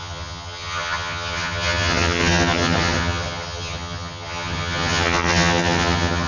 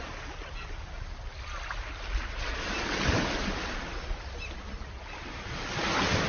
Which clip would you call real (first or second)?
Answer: second